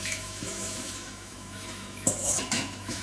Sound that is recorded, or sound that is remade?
remade